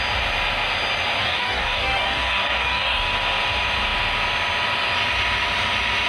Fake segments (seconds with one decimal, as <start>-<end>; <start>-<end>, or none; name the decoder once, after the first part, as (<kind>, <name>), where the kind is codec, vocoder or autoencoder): 1.2-3.1 (codec, DAC)